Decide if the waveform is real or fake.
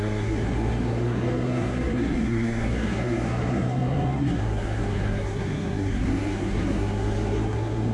fake